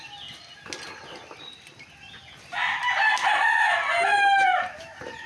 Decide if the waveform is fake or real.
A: real